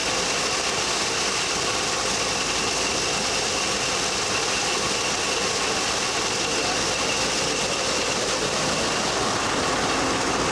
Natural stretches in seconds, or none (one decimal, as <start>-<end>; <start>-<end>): 0.0-10.5